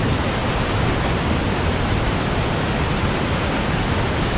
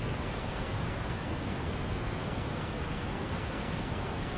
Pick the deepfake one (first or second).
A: second